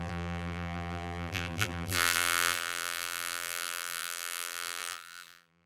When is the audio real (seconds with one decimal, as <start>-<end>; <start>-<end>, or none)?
none